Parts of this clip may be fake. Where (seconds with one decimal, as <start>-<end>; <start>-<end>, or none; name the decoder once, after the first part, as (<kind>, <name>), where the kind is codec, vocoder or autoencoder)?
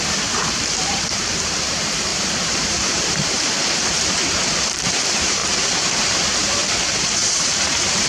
0.0-8.1 (vocoder, BigVGAN v2)